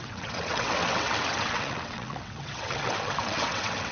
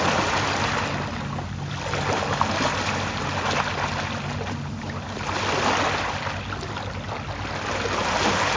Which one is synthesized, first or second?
first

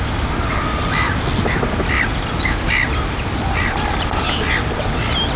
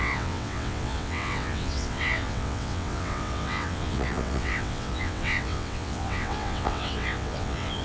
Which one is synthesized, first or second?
second